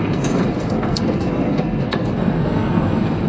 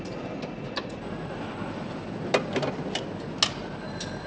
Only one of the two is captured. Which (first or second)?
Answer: second